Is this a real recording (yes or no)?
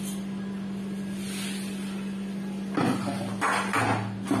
yes